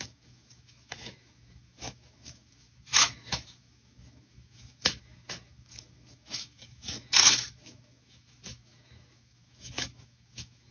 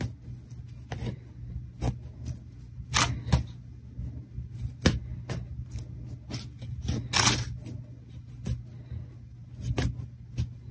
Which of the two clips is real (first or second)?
second